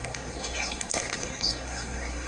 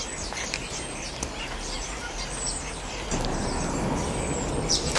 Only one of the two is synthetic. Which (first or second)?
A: first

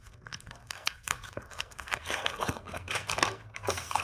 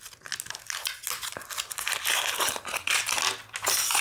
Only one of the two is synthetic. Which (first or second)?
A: first